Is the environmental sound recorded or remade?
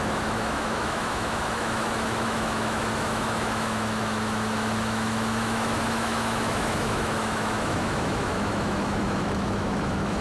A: remade